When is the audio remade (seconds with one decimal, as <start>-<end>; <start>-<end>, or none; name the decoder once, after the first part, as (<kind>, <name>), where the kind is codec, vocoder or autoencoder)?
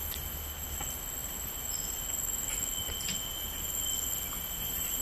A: none